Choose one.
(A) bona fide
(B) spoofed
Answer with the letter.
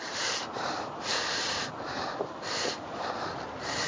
B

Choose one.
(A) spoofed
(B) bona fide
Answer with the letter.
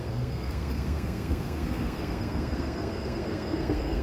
A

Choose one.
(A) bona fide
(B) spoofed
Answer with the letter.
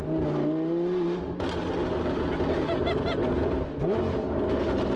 A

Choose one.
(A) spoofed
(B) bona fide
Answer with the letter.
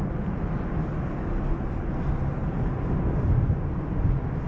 B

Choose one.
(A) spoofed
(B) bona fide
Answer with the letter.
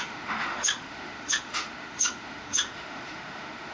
A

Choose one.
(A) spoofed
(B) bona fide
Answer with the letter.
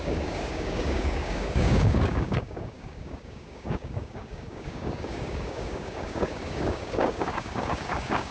A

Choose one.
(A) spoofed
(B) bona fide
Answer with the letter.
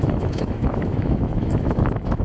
A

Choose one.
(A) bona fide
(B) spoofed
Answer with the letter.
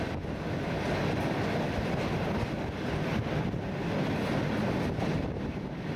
A